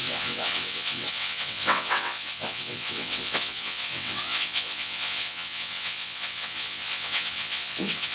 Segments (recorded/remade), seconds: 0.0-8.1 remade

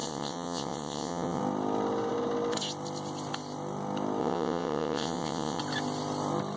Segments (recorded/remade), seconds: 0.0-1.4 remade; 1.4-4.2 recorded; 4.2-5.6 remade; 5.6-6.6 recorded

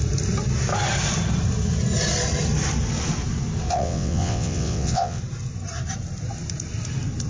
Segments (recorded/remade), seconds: 0.0-3.7 recorded; 3.7-5.2 remade; 5.2-7.3 recorded

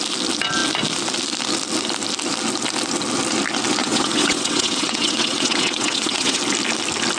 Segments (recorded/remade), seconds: 0.0-3.8 recorded; 3.8-6.4 remade; 6.4-7.2 recorded